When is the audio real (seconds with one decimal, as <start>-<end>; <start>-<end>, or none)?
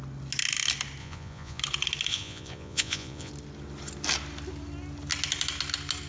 0.0-1.0; 1.6-2.1; 3.3-6.1